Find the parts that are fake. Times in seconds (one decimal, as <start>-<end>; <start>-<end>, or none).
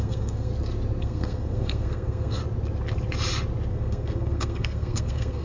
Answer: 0.0-0.5; 1.0-2.4; 3.7-5.4